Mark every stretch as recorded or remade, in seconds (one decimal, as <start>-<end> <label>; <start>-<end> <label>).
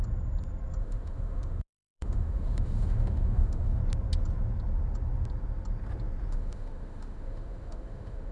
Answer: 0.0-0.8 recorded; 0.8-3.8 remade; 3.8-6.3 recorded; 6.3-8.3 remade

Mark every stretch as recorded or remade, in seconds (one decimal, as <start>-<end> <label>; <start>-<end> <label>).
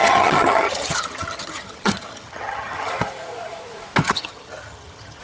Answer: 0.0-2.9 remade; 2.9-4.0 recorded; 4.0-5.2 remade